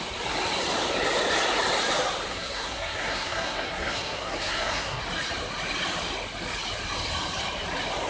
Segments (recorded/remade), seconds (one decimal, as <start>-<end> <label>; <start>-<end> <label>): 0.0-2.3 recorded; 2.3-5.0 remade; 5.0-8.1 recorded